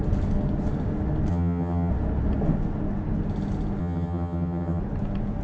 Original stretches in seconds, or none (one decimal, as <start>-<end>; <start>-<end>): 0.0-1.3; 1.9-3.8; 4.8-5.4